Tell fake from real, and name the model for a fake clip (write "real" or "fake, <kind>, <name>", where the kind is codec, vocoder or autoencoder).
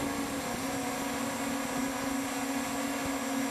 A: real